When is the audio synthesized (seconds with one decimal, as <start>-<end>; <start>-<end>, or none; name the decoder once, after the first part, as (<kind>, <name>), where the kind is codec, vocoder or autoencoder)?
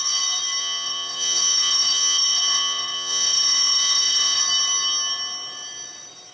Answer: 0.6-4.4 (vocoder, Vocos)